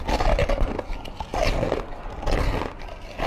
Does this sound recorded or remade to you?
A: recorded